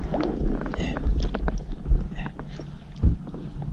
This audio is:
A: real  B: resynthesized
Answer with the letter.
A